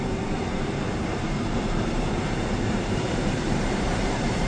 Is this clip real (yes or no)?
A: no